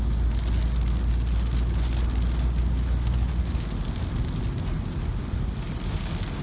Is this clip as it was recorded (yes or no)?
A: yes